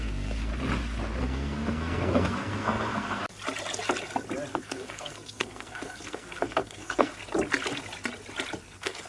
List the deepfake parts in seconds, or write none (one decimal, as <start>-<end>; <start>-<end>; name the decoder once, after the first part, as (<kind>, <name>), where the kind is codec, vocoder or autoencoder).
0.0-0.5 (codec, SNAC); 1.2-3.2; 4.5-7.2; 8.6-9.1